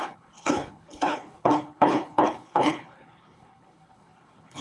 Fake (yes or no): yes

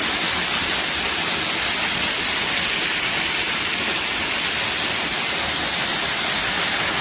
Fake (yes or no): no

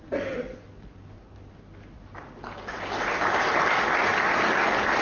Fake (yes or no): no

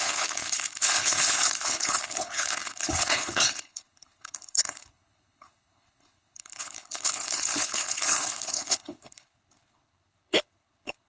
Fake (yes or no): yes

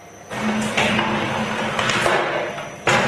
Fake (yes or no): no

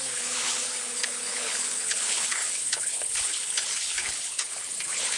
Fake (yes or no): yes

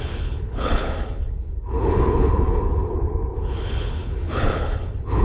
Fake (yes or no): yes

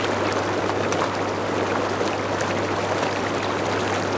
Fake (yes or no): no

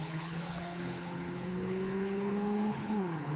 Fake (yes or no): yes